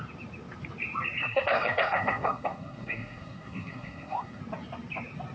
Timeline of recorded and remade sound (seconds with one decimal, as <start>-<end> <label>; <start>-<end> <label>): 0.0-1.2 recorded; 1.2-4.4 remade; 4.4-5.3 recorded